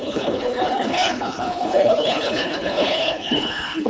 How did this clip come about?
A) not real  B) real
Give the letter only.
A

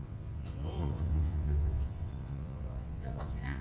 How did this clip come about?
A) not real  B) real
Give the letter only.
A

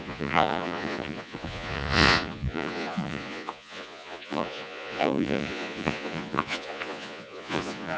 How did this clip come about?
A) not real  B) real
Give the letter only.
A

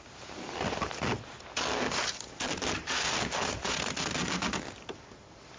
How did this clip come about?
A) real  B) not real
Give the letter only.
A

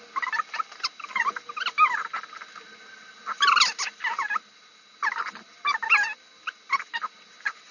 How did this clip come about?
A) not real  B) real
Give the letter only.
B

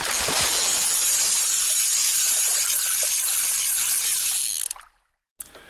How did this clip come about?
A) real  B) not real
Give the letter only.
A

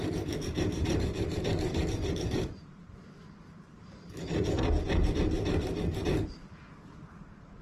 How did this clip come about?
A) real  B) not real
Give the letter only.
B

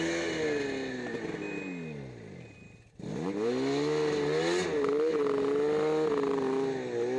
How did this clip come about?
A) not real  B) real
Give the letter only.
B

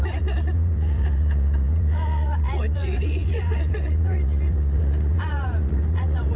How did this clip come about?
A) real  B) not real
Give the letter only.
B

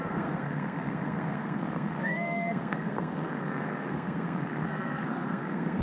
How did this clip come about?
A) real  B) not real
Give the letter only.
B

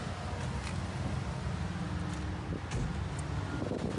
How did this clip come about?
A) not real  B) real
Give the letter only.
B